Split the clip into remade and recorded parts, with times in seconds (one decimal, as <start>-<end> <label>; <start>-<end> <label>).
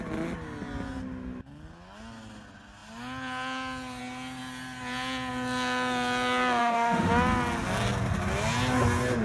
0.0-6.6 recorded; 6.6-7.1 remade; 7.1-9.2 recorded